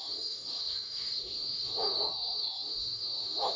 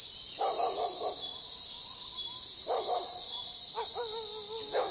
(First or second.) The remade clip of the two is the first